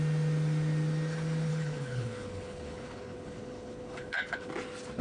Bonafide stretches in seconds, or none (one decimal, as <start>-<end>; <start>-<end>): 0.0-1.5; 4.5-5.0